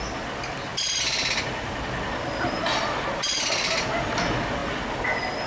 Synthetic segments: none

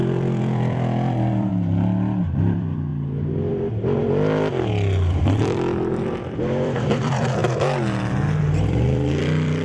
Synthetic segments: 0.0-1.5 (vocoder, BigVGAN v2); 2.4-2.9; 3.5-4.0; 4.7-7.4; 8.4-9.6

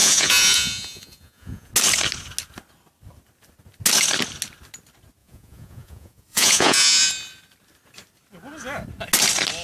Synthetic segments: 0.0-1.7 (vocoder, Vocos); 5.2-7.1

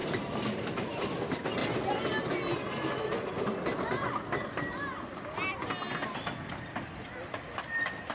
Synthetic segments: 0.0-1.0 (vocoder, BigVGAN v2)

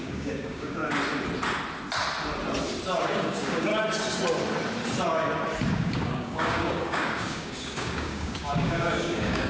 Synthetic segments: 0.0-0.8 (codec, DAC); 3.0-3.7; 5.7-9.5

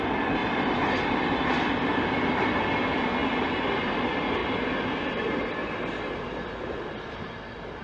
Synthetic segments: none

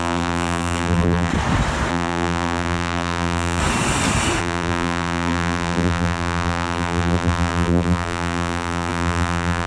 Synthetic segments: 0.0-1.3 (vocoder, BigVGAN v2); 1.9-3.6; 4.4-9.7